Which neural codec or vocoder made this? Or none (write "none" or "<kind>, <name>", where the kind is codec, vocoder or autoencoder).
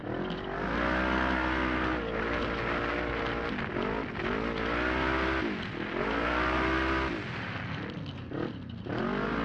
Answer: none